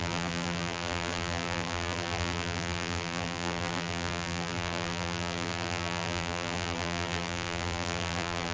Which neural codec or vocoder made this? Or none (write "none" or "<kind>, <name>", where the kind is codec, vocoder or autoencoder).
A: vocoder, BigVGAN v2